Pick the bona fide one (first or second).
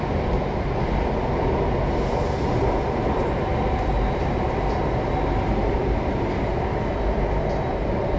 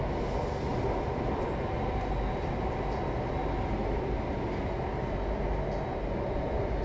second